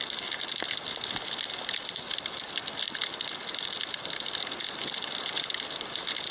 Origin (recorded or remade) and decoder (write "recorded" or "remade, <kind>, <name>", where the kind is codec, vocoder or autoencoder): recorded